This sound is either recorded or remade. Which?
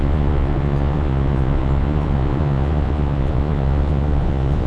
remade